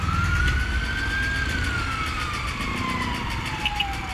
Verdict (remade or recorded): recorded